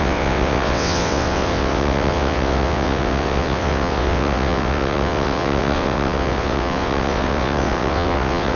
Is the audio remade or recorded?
remade